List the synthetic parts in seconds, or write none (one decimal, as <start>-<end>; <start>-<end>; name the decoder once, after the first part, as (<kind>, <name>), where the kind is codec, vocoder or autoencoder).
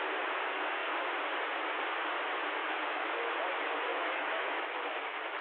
2.6-3.1 (autoencoder, DAC-VAE); 3.9-4.6